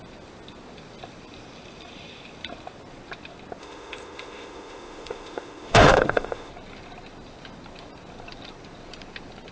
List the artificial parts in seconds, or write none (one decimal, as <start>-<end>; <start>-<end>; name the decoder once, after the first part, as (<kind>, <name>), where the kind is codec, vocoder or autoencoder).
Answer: 3.6-6.5 (autoencoder, DAC-VAE)